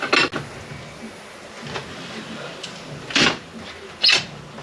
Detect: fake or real real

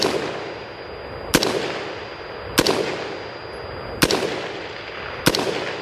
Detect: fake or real real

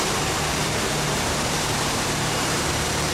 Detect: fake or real fake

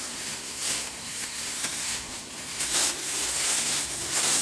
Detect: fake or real fake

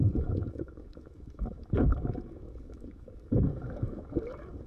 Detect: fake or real fake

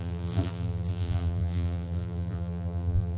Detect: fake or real fake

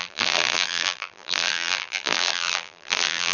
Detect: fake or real fake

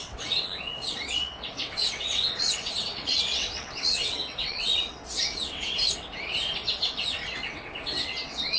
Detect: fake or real fake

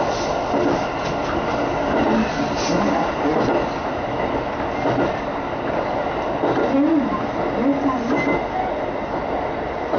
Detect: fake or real real